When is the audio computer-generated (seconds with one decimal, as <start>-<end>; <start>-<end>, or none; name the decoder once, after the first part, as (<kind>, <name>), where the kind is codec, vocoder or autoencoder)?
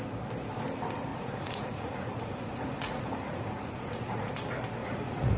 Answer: 1.1-4.3 (vocoder, Vocos); 4.8-5.4